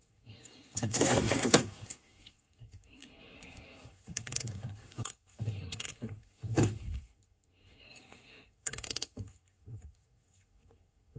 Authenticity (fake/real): fake